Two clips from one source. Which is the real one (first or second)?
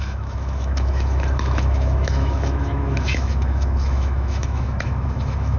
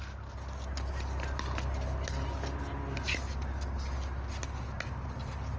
second